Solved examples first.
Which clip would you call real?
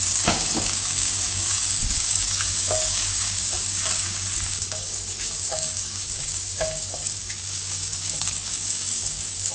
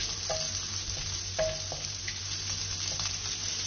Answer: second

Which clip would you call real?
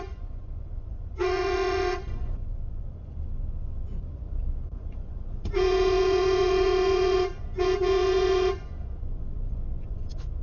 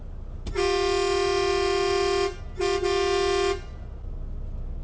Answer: second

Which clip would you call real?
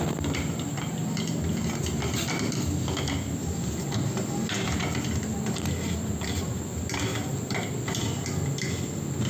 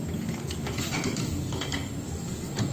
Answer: first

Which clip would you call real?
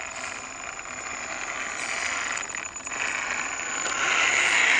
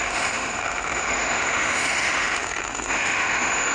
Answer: first